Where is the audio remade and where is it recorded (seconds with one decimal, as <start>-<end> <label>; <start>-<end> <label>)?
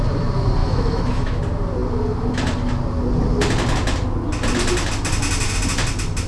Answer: 0.0-0.6 recorded; 0.6-1.4 remade; 1.4-6.3 recorded